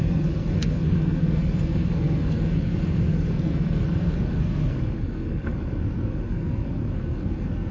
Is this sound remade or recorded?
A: remade